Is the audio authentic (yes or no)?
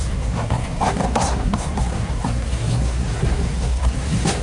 no